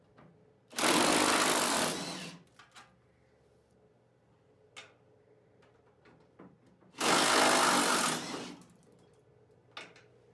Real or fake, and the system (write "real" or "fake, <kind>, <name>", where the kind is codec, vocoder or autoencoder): real